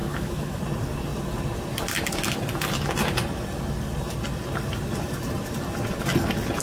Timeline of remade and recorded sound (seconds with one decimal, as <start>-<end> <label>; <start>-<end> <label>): 0.0-0.6 remade; 0.6-6.6 recorded